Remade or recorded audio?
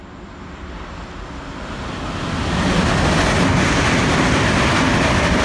recorded